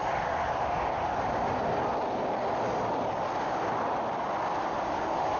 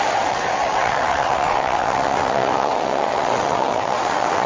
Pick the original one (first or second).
first